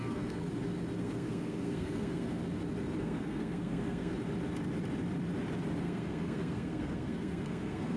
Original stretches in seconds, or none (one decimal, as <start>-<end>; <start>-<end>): 0.4-1.0; 2.4-3.0; 4.1-5.8